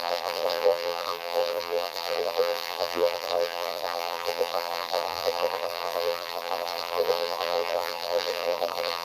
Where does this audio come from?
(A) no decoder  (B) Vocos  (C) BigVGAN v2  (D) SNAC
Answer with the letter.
C